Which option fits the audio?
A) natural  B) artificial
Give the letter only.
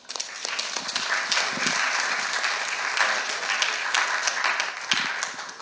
A